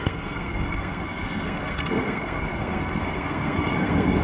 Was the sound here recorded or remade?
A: remade